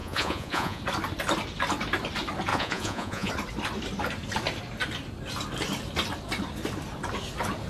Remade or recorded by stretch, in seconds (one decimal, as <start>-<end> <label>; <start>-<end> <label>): 0.0-0.8 remade; 0.8-2.5 recorded; 2.5-3.3 remade; 3.3-7.7 recorded

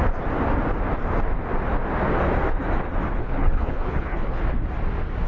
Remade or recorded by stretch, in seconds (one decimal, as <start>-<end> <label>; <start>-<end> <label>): 0.0-3.2 recorded; 3.2-4.4 remade; 4.4-5.3 recorded